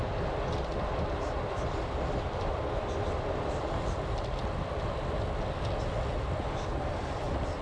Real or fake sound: fake